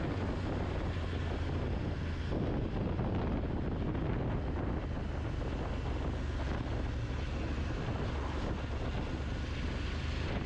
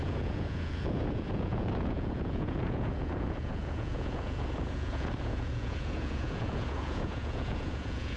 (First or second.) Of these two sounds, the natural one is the first